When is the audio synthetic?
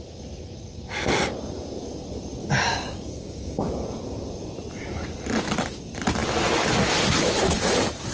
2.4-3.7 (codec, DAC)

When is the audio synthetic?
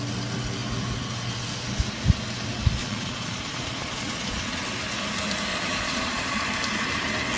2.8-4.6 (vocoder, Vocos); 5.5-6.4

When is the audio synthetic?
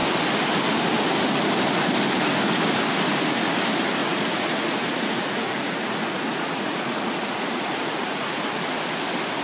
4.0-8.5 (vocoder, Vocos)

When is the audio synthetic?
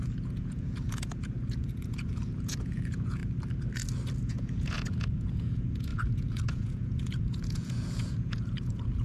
0.0-3.2 (vocoder, Vocos); 4.2-9.0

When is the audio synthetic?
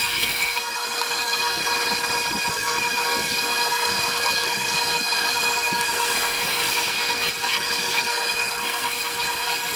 0.0-1.6 (codec, SNAC); 2.5-9.8